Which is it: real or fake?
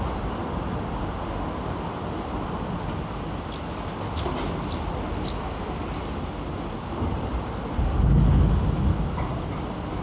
real